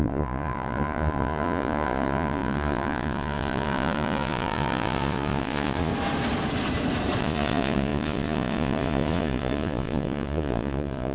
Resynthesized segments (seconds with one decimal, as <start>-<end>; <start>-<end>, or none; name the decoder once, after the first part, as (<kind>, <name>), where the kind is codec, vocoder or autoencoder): 0.0-5.9 (vocoder, Vocos); 7.2-11.1